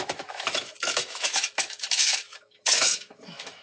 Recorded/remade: remade